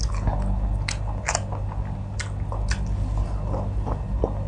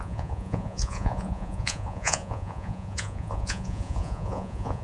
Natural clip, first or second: first